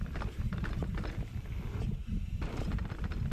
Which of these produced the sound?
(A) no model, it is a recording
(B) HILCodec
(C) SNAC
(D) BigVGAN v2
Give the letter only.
A